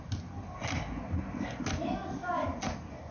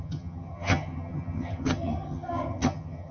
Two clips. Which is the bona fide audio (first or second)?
first